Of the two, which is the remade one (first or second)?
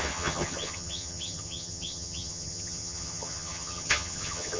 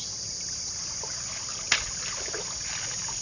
first